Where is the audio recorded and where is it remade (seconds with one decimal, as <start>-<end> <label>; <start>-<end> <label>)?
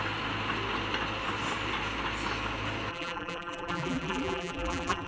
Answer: 0.0-2.9 recorded; 2.9-5.1 remade